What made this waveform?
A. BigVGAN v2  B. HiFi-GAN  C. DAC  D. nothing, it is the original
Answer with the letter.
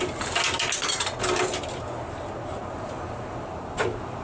D